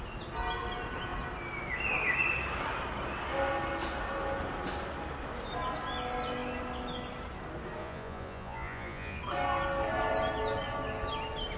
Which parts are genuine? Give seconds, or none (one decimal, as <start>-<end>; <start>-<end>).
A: 0.0-7.8; 9.2-11.6